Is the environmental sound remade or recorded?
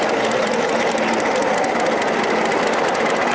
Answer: recorded